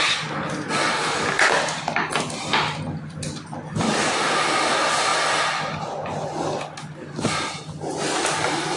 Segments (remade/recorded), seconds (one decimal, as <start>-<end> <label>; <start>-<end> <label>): 0.0-8.8 recorded